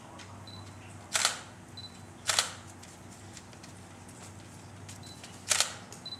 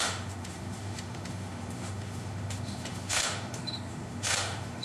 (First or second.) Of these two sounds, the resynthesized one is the second